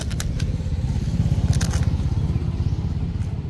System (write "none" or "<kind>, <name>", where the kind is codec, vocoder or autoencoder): none